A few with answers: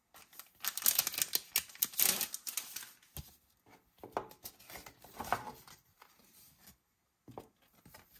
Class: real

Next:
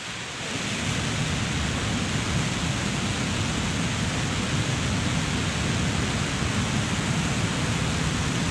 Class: real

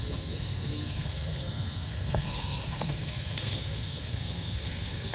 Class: fake